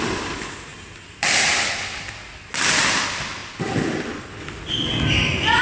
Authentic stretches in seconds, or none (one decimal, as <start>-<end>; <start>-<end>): 0.0-0.7; 2.1-5.6